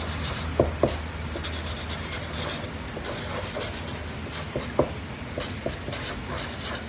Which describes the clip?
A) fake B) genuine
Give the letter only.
B